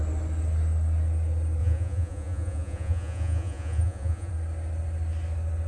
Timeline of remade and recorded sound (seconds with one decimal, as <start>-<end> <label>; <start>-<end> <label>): 0.0-1.6 recorded; 1.6-4.3 remade; 4.3-5.7 recorded